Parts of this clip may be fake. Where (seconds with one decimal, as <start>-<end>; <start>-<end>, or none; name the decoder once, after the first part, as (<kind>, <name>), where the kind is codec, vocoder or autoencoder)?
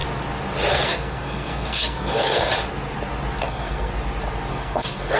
0.7-2.5 (codec, SNAC); 3.4-3.9; 4.5-5.2